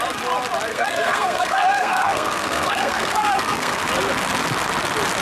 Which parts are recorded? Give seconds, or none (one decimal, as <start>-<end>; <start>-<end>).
0.0-0.7; 3.8-5.2